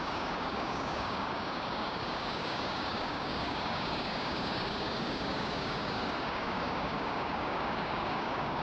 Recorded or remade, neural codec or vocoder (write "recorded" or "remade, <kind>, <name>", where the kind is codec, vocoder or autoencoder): remade, codec, DAC